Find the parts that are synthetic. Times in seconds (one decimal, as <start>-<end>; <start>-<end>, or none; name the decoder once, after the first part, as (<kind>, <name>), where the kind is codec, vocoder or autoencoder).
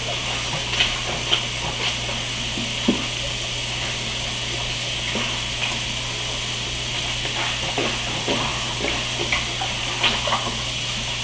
none